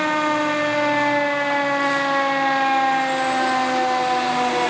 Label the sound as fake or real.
real